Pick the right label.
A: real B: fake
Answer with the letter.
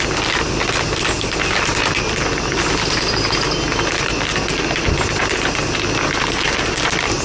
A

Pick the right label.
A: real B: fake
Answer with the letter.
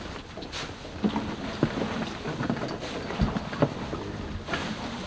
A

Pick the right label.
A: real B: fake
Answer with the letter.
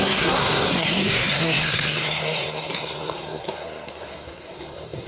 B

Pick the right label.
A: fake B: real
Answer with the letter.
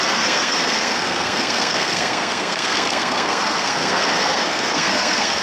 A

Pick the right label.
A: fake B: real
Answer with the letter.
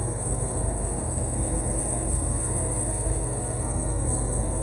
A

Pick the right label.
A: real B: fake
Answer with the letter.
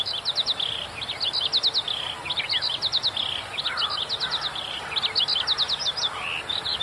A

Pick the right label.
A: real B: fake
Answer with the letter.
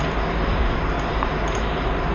A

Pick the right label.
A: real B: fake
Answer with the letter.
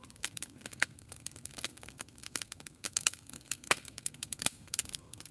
B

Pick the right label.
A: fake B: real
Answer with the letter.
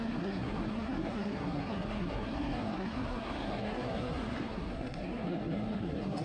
A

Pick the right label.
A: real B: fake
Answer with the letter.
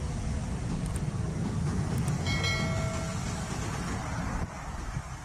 A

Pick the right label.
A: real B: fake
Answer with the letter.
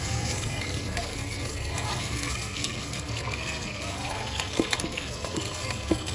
B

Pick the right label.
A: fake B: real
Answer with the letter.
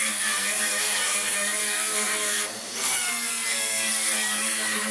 A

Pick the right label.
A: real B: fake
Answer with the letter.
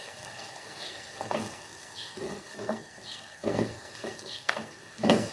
B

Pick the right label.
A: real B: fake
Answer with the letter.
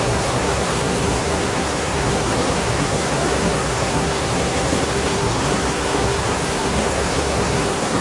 B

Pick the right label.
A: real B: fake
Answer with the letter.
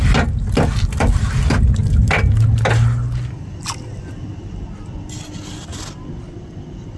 A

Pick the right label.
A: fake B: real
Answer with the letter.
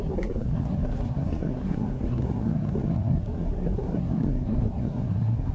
A